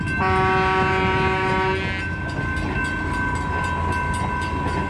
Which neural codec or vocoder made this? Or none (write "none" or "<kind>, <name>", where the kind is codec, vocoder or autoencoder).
none